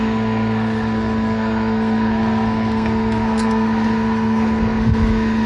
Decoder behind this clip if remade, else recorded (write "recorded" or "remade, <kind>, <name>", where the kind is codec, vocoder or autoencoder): remade, codec, SNAC